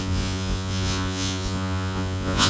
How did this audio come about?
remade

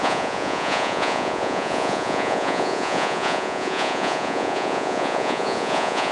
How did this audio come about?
remade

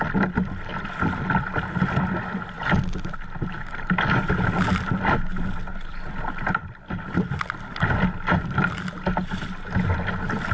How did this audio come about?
recorded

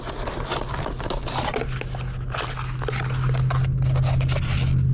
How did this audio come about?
recorded